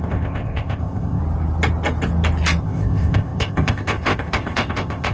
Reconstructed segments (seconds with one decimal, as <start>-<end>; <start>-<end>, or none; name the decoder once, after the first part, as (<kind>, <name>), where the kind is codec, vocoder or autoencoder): 0.0-1.2 (codec, ZipCodec); 2.6-5.1